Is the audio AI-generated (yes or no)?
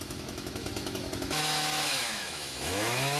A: yes